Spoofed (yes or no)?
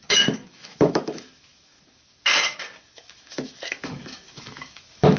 yes